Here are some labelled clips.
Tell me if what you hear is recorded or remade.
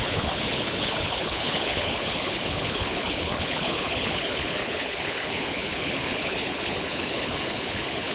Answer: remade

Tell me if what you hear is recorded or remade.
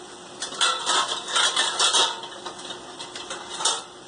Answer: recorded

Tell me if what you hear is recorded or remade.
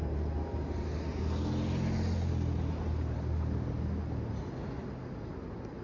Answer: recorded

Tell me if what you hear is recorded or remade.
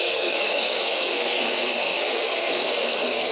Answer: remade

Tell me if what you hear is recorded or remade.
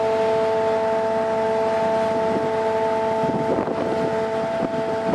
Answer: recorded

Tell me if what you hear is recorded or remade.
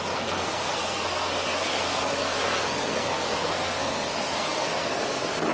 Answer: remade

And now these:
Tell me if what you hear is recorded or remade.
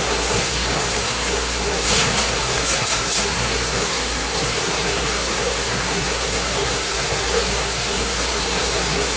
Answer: remade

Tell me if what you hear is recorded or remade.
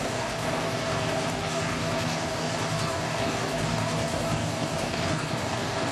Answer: remade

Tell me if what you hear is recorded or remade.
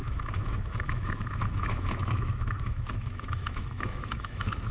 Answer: remade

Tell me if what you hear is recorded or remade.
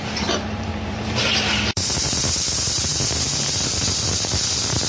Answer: remade